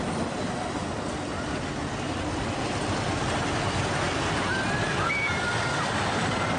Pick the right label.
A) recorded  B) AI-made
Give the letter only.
A